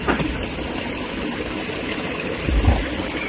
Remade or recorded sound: recorded